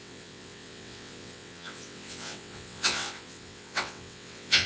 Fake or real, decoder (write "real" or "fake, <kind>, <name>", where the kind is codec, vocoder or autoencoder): fake, vocoder, WaveNeXt